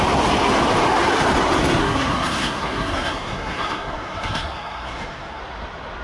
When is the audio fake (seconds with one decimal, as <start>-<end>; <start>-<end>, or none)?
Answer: 1.8-5.4